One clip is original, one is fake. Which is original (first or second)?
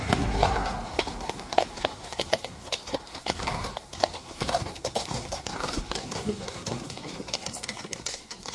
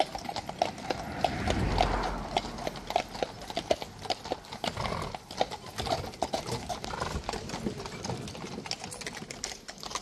second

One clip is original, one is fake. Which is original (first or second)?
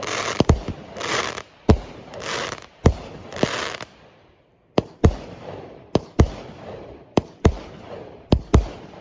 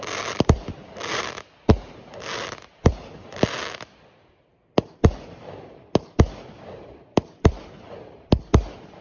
second